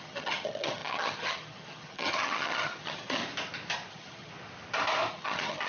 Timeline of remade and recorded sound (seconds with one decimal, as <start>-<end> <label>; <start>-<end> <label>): 0.0-3.2 remade; 3.2-3.9 recorded; 3.9-4.3 remade; 4.3-5.1 recorded; 5.1-5.7 remade